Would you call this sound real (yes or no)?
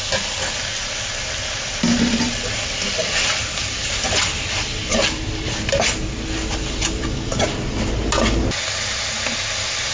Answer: yes